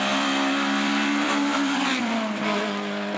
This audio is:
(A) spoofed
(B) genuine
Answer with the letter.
A